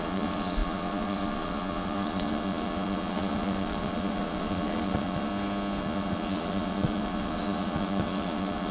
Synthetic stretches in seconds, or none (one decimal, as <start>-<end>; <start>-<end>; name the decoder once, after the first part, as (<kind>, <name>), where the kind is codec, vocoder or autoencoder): 0.0-5.3 (vocoder, Vocos); 5.8-8.7